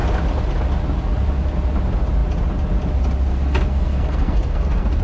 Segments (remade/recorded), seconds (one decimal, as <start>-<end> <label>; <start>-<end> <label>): 0.0-3.3 recorded; 3.3-5.0 remade